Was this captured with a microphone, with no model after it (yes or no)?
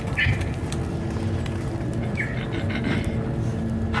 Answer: yes